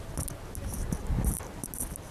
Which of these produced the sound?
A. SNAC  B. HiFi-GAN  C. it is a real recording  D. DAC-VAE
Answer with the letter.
C